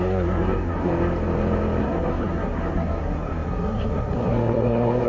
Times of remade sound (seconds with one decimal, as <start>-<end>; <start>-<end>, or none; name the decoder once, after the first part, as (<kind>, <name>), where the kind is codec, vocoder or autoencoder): 0.0-0.9 (codec, SNAC); 1.8-5.1